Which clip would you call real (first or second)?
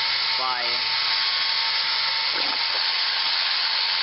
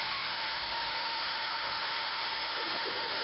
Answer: first